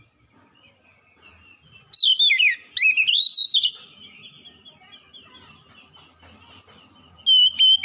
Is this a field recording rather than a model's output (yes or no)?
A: yes